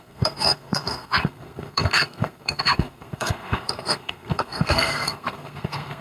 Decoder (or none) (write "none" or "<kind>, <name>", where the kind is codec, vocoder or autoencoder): codec, SNAC